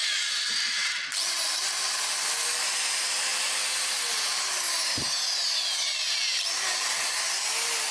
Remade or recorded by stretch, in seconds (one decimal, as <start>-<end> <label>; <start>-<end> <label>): 0.0-7.9 recorded